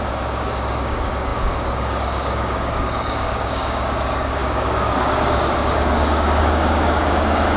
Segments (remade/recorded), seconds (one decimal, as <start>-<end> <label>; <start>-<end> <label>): 0.0-7.6 remade